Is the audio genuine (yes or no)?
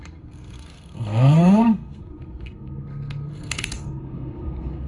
no